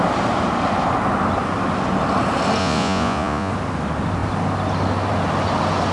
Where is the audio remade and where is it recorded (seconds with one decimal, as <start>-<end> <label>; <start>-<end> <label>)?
0.0-2.6 recorded; 2.6-3.5 remade; 3.5-5.9 recorded